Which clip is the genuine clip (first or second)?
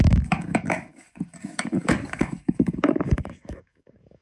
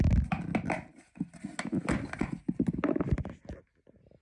second